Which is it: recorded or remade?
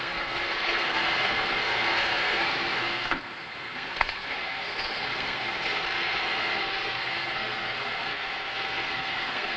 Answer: remade